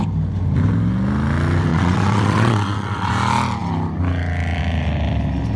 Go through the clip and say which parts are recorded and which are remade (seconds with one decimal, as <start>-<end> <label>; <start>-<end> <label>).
0.0-1.7 recorded; 1.7-3.1 remade; 3.1-5.6 recorded